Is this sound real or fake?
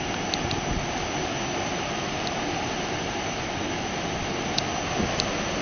real